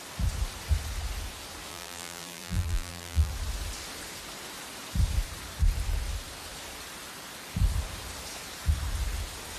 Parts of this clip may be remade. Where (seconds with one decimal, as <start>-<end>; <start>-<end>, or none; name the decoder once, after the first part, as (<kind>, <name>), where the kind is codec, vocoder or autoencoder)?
1.7-3.3 (vocoder, BigVGAN v2)